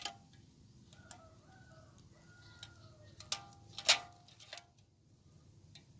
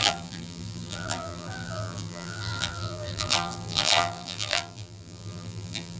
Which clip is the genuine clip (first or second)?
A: first